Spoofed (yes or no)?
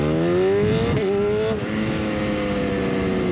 no